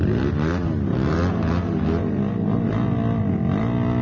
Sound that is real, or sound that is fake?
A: real